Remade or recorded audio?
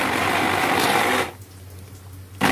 recorded